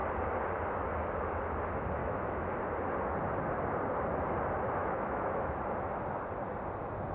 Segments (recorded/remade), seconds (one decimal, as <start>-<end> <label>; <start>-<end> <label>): 0.0-2.0 recorded; 2.0-2.6 remade; 2.6-4.8 recorded; 4.8-5.6 remade; 5.6-7.1 recorded